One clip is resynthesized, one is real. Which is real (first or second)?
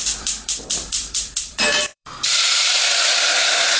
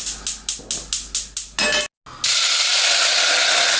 second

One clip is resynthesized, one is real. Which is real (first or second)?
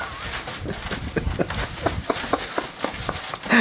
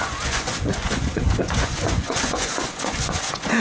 first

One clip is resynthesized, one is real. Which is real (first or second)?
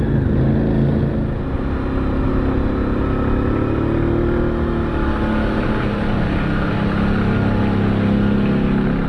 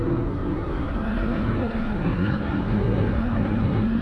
first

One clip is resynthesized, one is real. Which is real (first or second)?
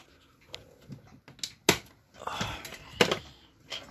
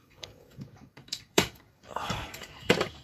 first